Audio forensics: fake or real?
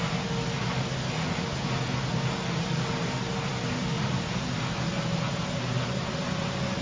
real